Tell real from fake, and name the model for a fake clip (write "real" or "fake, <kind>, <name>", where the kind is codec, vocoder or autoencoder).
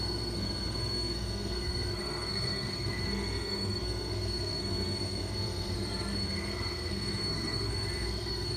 fake, codec, SNAC